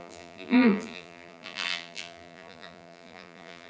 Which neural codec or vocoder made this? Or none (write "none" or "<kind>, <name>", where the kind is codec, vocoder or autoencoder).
vocoder, BigVGAN v2